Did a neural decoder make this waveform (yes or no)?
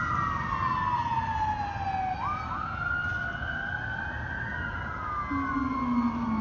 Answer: no